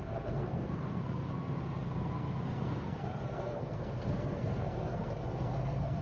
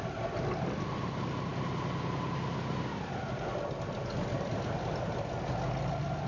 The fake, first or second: first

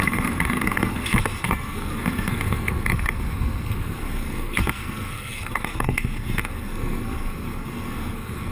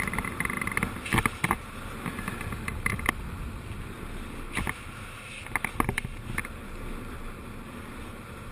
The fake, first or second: first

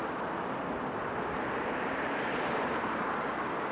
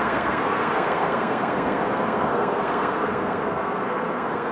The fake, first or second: second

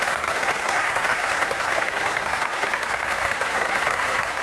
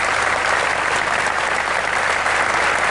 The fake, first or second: first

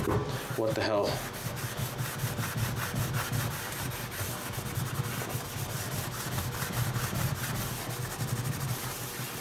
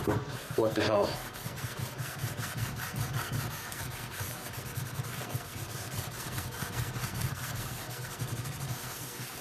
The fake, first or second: second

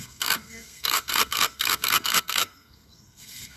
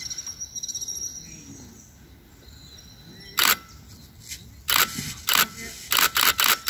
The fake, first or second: first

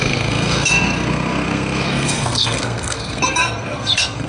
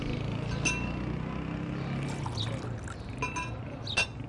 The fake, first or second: first